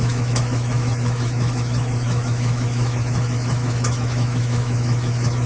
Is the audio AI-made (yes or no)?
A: yes